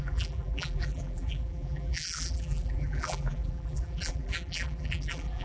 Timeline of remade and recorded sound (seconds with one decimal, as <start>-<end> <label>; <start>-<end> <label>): 0.0-5.4 remade

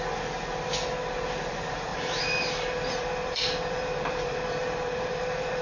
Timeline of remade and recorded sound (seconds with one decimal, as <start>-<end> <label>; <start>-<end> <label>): 0.0-1.9 recorded; 1.9-5.6 remade

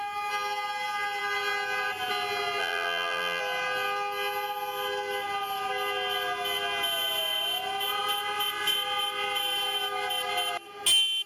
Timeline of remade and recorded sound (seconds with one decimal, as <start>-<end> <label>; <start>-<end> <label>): 0.0-2.6 recorded; 2.6-3.4 remade; 3.4-11.3 recorded

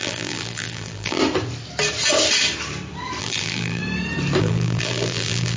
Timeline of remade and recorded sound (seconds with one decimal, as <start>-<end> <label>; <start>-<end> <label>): 0.0-1.2 remade; 1.2-3.2 recorded; 3.2-3.8 remade; 3.8-4.4 recorded; 4.4-5.6 remade

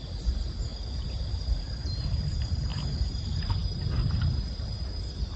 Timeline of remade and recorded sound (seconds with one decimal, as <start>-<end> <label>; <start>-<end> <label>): 0.0-2.7 recorded; 2.7-3.5 remade; 3.5-5.4 recorded

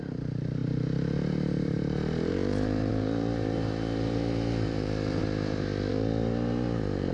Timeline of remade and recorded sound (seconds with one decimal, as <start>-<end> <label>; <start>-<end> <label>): 0.0-5.2 remade; 5.2-5.9 recorded; 5.9-7.1 remade

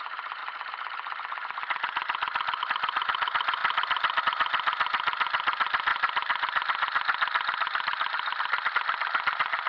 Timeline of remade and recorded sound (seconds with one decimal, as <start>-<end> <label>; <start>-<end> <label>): 0.0-0.4 recorded; 0.4-2.6 remade; 2.6-5.9 recorded; 5.9-8.7 remade; 8.7-9.7 recorded

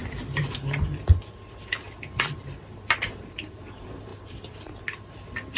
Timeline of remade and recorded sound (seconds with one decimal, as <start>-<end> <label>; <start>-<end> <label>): 0.0-4.1 remade; 4.1-4.8 recorded; 4.8-5.6 remade